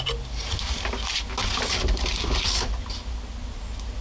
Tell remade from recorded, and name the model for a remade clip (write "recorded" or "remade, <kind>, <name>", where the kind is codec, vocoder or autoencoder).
recorded